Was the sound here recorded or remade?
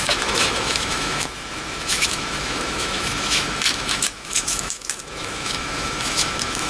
remade